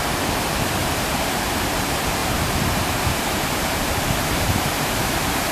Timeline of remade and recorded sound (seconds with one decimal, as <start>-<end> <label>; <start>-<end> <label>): 0.0-0.8 recorded; 0.8-1.7 remade; 1.7-2.2 recorded; 2.2-4.9 remade; 4.9-5.5 recorded